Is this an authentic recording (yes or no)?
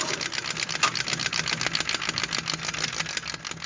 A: yes